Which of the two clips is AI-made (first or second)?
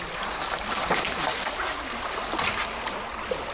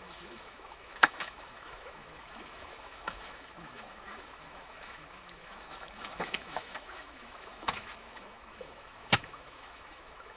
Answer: second